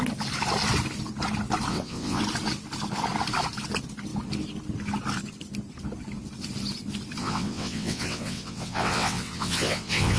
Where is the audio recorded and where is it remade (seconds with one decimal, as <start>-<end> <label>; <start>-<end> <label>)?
0.0-1.7 recorded; 1.7-2.2 remade; 2.2-7.2 recorded; 7.2-10.2 remade